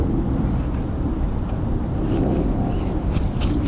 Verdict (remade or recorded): recorded